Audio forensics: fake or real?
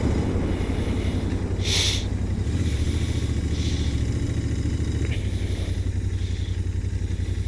real